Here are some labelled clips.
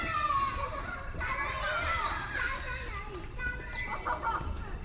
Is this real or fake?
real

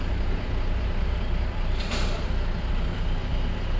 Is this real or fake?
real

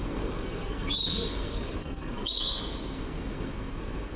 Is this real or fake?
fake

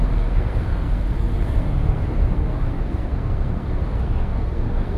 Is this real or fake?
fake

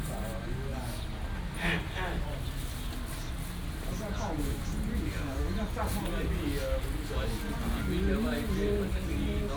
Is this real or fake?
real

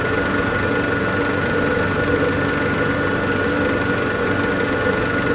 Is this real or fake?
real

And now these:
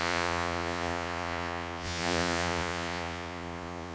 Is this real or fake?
fake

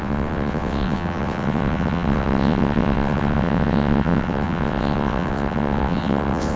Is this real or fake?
fake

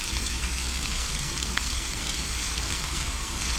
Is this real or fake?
fake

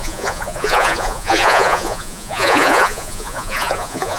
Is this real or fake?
fake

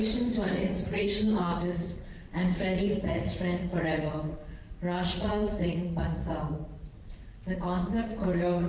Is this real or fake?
fake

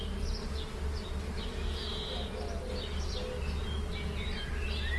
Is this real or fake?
real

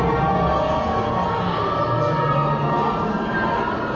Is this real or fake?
fake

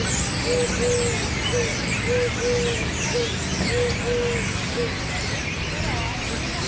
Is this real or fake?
real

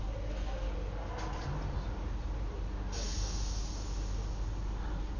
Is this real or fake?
real